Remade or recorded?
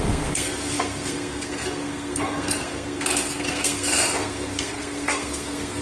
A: remade